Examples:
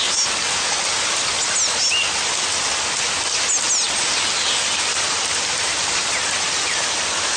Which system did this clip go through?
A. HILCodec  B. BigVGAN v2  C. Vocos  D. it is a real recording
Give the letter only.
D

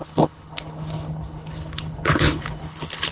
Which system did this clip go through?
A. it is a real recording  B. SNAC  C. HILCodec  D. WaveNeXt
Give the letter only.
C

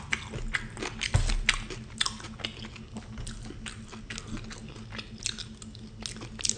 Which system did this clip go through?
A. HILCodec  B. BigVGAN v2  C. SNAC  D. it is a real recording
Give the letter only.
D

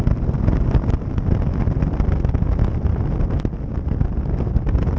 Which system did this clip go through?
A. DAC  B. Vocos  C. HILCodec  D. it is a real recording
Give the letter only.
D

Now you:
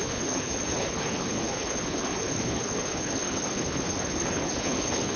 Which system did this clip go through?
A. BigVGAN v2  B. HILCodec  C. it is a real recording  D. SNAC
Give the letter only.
B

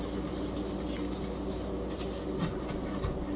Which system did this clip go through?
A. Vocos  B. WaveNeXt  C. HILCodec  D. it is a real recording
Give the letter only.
D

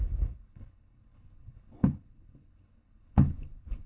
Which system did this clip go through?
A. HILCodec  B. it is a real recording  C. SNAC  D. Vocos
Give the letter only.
A